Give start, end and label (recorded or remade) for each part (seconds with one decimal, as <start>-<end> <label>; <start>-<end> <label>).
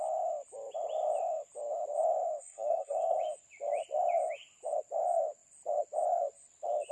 0.0-2.4 recorded; 2.4-3.2 remade; 3.2-6.9 recorded